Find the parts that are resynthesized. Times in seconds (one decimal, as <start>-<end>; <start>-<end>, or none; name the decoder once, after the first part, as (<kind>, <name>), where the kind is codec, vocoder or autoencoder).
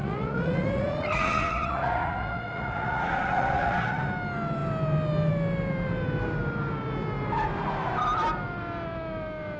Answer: 0.0-4.0 (vocoder, Vocos)